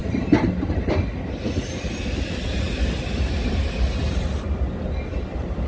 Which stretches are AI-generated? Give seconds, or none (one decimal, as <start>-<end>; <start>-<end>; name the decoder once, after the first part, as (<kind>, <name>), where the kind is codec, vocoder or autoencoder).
0.0-0.9 (vocoder, BigVGAN v2); 2.5-4.4